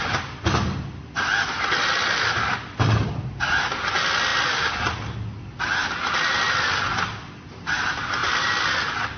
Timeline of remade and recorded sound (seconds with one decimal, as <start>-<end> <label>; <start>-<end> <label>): 0.0-9.2 recorded